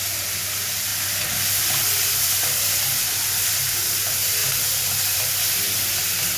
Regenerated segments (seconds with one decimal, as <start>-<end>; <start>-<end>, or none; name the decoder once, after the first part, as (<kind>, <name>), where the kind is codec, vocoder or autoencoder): none